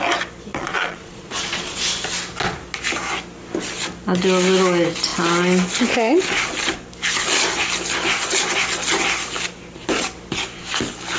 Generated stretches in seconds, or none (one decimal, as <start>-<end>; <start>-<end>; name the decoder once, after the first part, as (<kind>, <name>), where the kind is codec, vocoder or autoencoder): 0.5-1.8 (vocoder, Vocos)